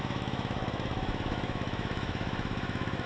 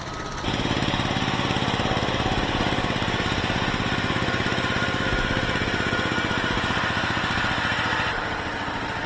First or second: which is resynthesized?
first